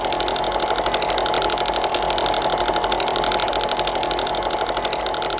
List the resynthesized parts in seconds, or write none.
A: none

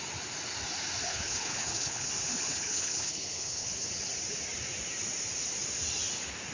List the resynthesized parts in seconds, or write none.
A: 1.1-2.1; 2.5-3.9

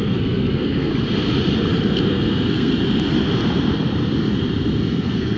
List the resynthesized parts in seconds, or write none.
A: 0.0-0.9; 2.1-2.7; 4.9-5.4

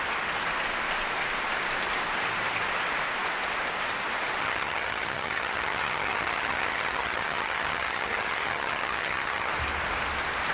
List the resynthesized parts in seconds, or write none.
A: 4.4-9.5